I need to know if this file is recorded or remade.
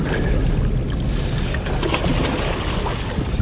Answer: recorded